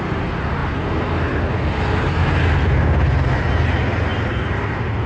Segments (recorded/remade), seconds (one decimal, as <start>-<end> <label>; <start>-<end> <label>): 0.0-5.1 recorded